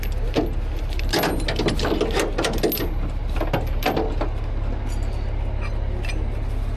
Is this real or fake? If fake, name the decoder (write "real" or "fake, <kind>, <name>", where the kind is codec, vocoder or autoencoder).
real